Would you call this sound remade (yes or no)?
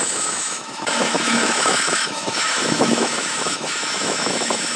yes